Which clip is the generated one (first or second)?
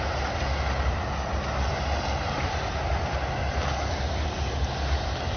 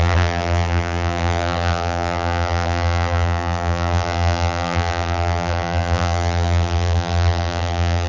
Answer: second